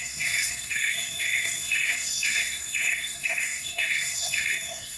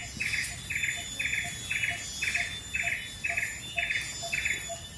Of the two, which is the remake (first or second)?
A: first